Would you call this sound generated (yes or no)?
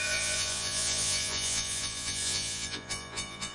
yes